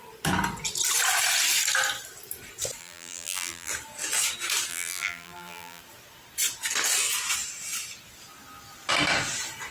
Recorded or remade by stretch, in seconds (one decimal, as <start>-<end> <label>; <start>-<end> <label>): 0.0-2.8 recorded; 2.8-3.7 remade; 3.7-4.7 recorded; 4.7-5.8 remade; 5.8-9.7 recorded